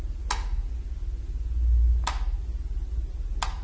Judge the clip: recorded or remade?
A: recorded